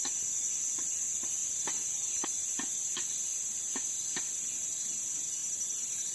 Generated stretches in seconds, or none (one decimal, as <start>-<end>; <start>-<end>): 3.3-3.9; 5.4-6.1